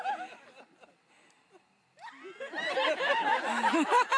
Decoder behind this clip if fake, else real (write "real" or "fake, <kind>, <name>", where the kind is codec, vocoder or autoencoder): real